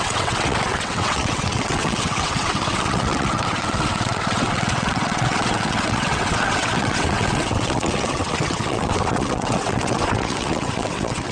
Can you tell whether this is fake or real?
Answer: fake